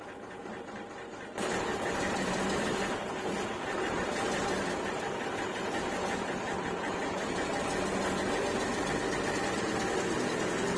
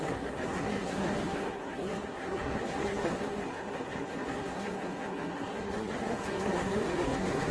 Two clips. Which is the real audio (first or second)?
first